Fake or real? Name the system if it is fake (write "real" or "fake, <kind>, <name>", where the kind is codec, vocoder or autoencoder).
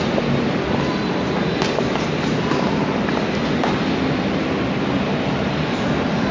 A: real